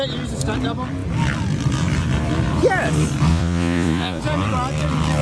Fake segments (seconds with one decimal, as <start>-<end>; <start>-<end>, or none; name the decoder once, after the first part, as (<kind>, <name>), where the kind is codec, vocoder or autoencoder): 3.3-4.2 (vocoder, Vocos)